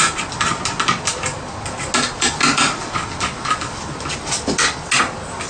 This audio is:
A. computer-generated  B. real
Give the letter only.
B